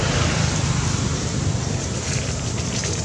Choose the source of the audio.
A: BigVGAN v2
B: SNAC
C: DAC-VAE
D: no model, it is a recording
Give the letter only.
D